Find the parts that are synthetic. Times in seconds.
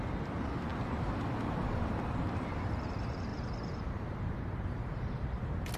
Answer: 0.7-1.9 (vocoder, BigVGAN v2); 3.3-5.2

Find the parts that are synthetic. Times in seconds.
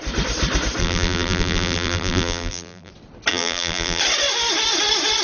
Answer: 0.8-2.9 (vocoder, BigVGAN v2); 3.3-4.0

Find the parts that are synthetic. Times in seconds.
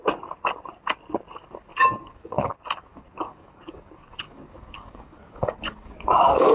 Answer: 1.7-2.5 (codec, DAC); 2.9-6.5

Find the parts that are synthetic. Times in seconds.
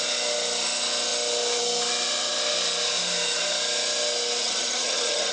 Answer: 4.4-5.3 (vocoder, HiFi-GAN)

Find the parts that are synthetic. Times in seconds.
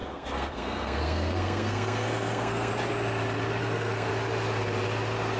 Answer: 0.0-2.7 (codec, SNAC); 3.6-4.1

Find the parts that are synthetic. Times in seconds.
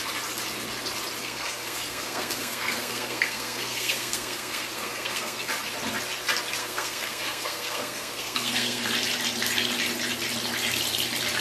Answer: 1.2-5.5 (codec, SNAC); 6.6-8.8